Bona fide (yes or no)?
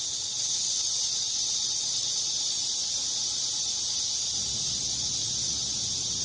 yes